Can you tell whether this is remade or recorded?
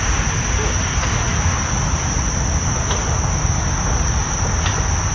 recorded